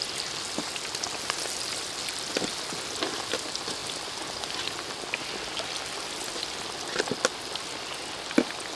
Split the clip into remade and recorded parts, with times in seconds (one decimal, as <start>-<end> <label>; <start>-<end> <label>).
0.0-8.8 recorded